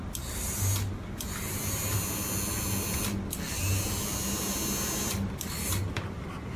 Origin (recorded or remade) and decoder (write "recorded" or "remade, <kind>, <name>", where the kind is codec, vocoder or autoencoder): recorded